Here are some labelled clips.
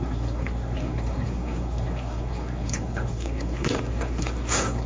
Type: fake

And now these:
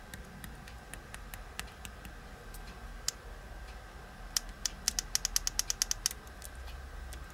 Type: real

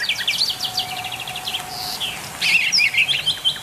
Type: real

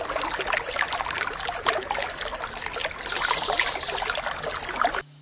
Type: real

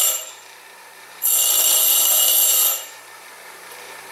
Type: fake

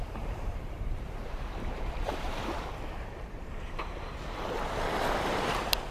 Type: fake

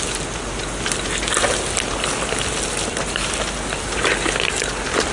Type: real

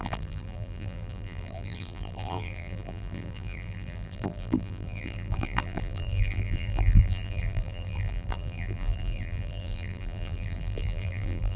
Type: fake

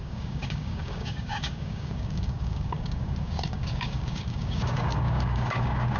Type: fake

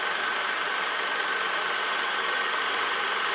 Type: real